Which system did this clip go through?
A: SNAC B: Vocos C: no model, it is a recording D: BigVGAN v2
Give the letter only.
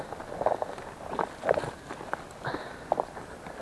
C